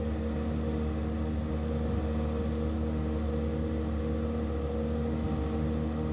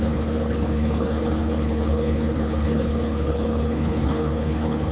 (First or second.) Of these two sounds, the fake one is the second